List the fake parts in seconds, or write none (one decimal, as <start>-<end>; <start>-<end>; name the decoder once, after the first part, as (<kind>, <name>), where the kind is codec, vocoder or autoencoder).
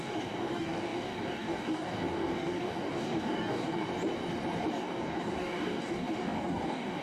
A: 0.0-3.9 (codec, DAC); 4.7-7.0